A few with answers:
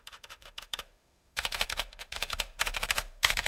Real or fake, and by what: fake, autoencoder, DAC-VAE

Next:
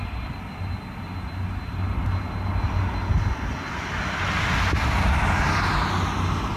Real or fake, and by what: real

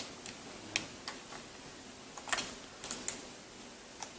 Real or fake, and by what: real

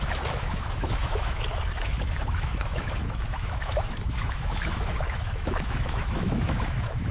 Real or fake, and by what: fake, autoencoder, DAC-VAE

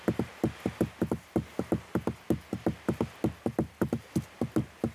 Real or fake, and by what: real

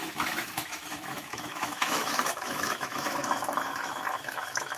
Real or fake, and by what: fake, autoencoder, DAC-VAE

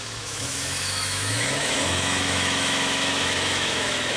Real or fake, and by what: fake, autoencoder, DAC-VAE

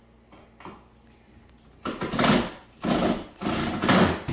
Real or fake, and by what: real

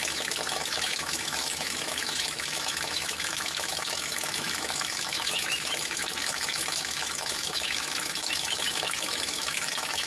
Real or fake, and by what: fake, autoencoder, DAC-VAE